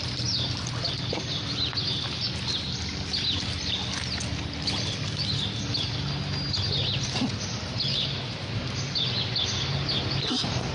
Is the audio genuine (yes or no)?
yes